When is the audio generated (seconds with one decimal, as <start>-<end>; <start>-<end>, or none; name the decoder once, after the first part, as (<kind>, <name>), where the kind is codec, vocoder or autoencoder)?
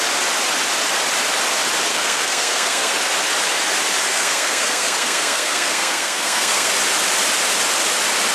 1.9-2.9 (codec, SNAC); 4.1-6.7